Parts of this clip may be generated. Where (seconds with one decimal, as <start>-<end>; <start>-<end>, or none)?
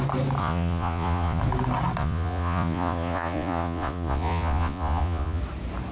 0.4-1.4; 2.0-5.4